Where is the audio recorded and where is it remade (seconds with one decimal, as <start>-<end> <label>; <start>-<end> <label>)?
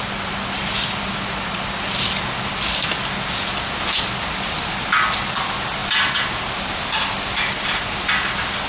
0.0-8.7 recorded